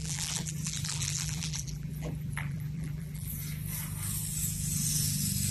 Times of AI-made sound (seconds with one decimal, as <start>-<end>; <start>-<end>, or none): 0.0-3.3